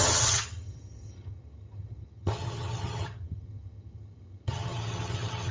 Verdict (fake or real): fake